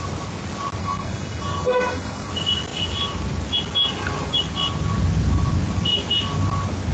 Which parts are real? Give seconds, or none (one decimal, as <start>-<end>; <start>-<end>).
0.0-0.8; 2.3-6.9